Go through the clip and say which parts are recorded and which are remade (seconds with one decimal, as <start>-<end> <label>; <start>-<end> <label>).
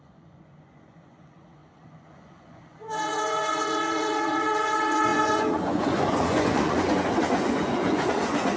0.0-8.6 remade